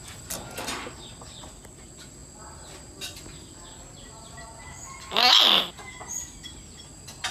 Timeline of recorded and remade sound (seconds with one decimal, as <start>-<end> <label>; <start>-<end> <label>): 0.0-7.3 recorded